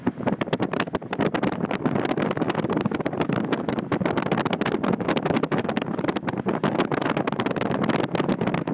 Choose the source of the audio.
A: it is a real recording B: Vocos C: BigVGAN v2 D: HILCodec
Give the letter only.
A